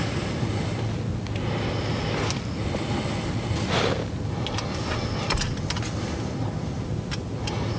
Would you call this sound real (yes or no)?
yes